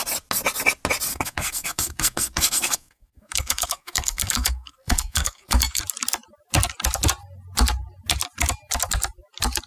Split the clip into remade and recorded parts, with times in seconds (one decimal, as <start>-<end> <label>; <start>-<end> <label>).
0.0-1.1 recorded; 1.1-5.8 remade; 5.8-9.7 recorded